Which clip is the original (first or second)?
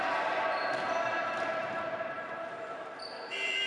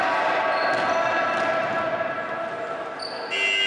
second